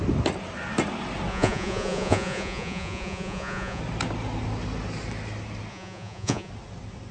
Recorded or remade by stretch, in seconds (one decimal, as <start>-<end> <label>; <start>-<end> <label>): 0.0-1.3 recorded; 1.3-3.8 remade; 3.8-5.7 recorded; 5.7-6.5 remade; 6.5-7.1 recorded